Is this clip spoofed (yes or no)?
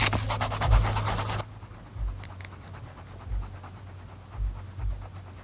no